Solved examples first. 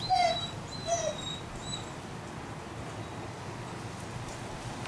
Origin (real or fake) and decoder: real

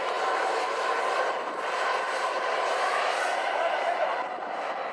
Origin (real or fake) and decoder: real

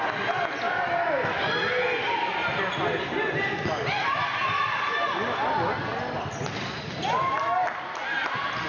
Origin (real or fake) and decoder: real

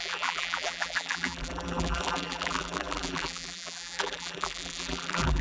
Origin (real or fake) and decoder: fake, vocoder, BigVGAN v2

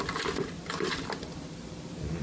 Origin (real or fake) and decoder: fake, vocoder, BigVGAN v2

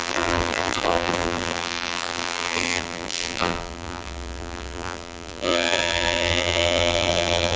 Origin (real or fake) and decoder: fake, vocoder, BigVGAN v2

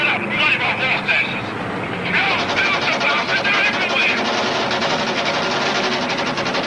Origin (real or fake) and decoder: real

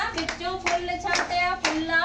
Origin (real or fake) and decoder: real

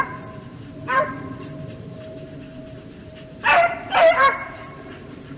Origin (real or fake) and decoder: fake, vocoder, BigVGAN v2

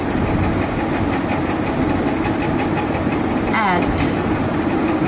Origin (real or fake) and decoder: real